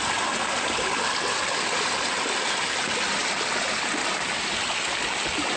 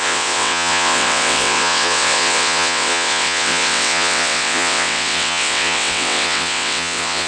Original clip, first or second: first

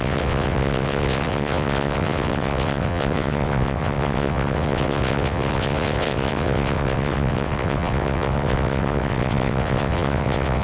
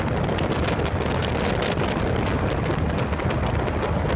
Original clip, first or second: second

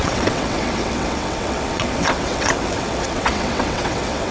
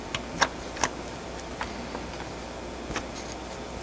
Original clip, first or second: second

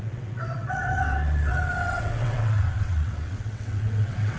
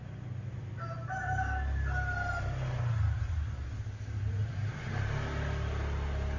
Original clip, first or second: second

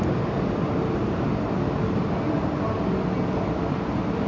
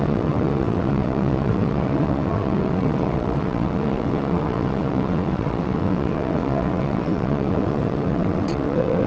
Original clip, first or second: first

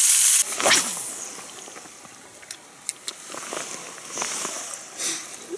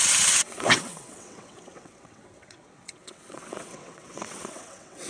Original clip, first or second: first